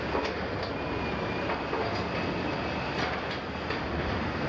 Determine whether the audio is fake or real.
real